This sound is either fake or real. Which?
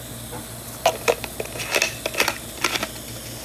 real